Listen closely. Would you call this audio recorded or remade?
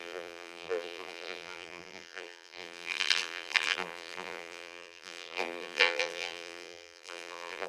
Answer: remade